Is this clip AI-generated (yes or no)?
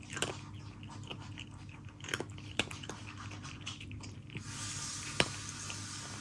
no